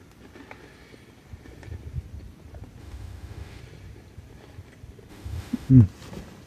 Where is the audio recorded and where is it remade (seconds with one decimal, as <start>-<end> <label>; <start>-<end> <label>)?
0.0-2.8 recorded; 2.8-3.6 remade; 3.6-5.1 recorded; 5.1-5.7 remade; 5.7-6.5 recorded